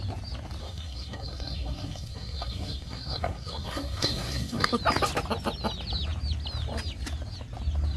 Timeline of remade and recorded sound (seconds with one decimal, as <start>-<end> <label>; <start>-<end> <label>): 0.0-0.6 recorded; 0.6-4.8 remade; 4.8-8.0 recorded